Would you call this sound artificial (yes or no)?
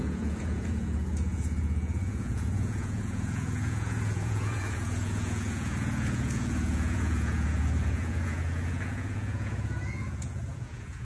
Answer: yes